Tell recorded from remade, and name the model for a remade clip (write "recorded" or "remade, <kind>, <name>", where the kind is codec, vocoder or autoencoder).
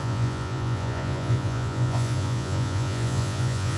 remade, vocoder, Vocos